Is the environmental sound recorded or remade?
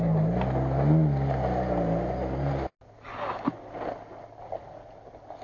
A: recorded